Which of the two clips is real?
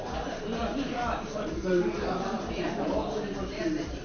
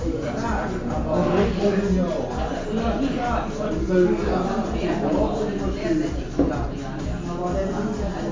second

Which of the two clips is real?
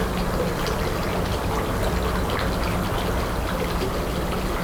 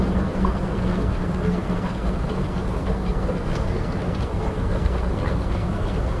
first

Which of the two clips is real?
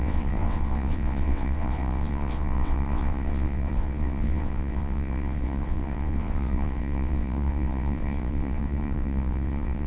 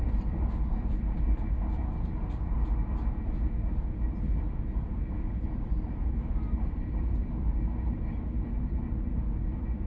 second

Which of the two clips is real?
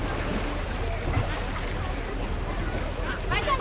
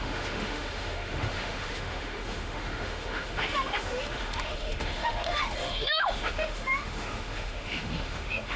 first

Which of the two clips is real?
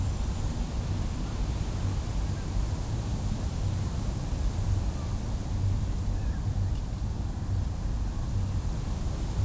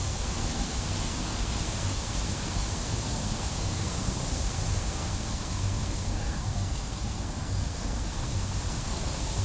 first